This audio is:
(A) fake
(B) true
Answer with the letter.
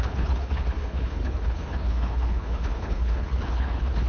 A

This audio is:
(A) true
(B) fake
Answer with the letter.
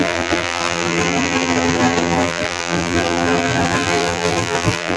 B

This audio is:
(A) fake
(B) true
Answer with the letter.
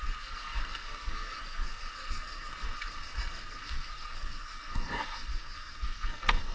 A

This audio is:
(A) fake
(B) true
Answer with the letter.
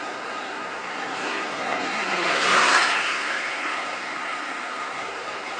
A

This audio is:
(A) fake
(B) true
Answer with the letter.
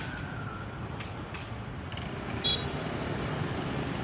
A